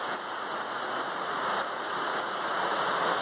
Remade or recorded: remade